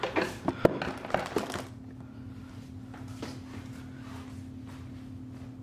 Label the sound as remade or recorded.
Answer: recorded